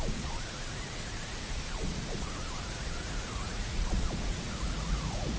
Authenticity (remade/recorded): remade